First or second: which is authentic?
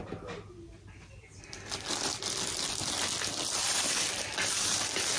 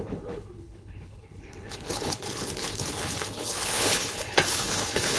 first